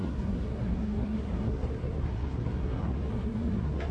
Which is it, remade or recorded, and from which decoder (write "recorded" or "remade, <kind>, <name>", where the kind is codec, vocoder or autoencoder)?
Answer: remade, codec, SNAC